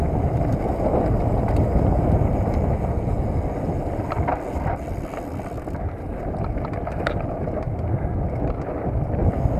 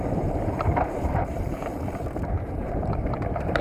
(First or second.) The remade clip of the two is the second